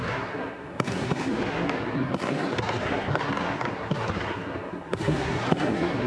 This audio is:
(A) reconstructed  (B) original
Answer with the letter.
A